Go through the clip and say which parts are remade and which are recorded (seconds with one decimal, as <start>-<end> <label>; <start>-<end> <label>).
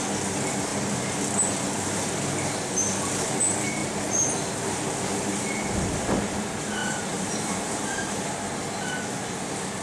0.0-0.7 recorded; 0.7-1.3 remade; 1.3-6.8 recorded; 6.8-8.5 remade; 8.5-9.8 recorded